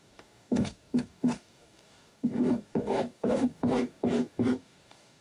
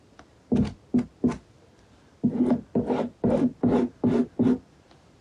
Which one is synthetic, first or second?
first